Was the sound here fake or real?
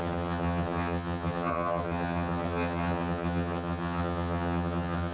fake